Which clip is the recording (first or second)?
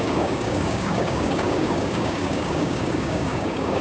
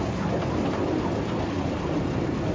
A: second